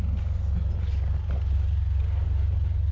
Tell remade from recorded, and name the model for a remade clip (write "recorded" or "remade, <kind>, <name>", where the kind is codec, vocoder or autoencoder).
recorded